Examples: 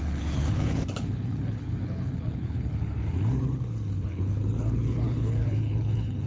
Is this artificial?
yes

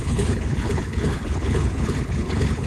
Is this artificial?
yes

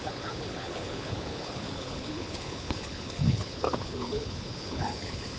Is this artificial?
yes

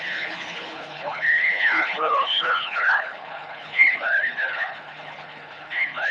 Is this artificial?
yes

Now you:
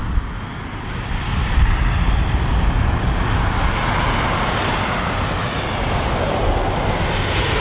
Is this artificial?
no